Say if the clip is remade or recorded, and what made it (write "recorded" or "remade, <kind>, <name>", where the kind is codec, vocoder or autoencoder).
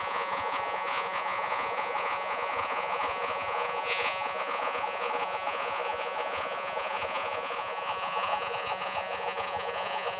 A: remade, vocoder, Vocos